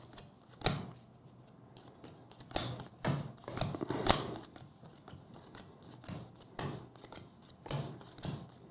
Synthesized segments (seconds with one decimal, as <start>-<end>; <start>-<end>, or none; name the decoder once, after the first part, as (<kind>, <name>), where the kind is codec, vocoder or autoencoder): none